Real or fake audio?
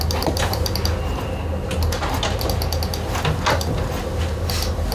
real